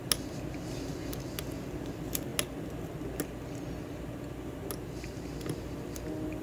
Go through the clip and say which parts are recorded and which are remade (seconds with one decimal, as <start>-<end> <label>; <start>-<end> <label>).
0.0-1.4 recorded; 1.4-2.3 remade; 2.3-6.4 recorded